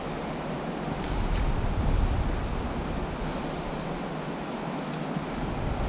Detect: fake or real real